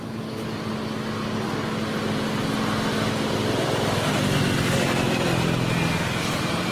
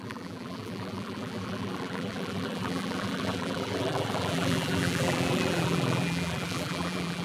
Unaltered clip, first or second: first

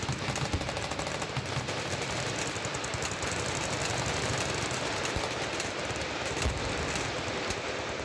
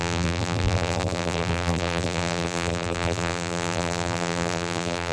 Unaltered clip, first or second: first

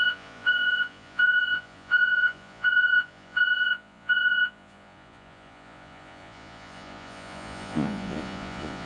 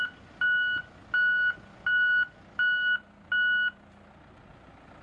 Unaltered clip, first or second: second